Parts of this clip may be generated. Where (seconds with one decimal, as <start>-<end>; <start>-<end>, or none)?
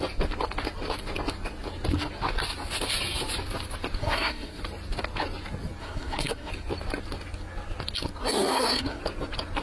4.0-4.6; 5.8-6.5; 8.2-9.0